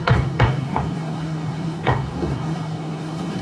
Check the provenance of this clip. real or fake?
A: fake